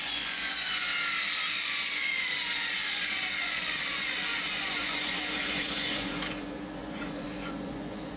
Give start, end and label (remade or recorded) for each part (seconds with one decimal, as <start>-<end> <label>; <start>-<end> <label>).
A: 0.0-0.9 remade; 0.9-1.5 recorded; 1.5-8.2 remade